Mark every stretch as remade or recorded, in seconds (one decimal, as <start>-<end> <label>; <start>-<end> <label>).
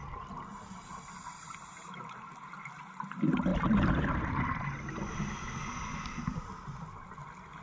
0.0-0.5 recorded; 0.5-1.5 remade; 1.5-7.6 recorded